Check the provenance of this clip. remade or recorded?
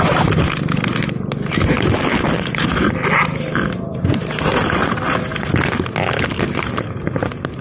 recorded